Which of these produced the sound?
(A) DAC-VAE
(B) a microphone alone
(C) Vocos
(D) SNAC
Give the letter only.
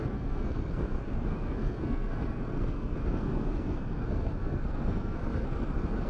D